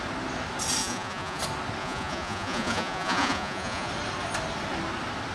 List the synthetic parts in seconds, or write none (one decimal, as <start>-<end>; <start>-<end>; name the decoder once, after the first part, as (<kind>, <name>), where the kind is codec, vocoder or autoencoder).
0.8-1.4 (vocoder, Vocos); 1.8-3.9